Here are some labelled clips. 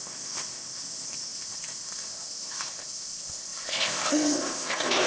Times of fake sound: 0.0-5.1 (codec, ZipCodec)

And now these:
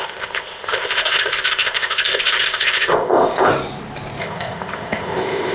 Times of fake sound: 0.0-3.5 (codec, ZipCodec); 4.2-5.5